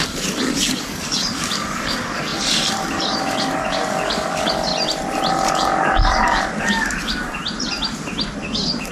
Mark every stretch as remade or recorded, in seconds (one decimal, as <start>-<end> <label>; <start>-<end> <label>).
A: 0.0-4.7 remade; 4.7-5.3 recorded; 5.3-7.4 remade; 7.4-8.4 recorded; 8.4-8.9 remade